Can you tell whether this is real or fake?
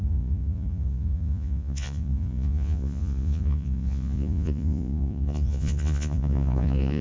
fake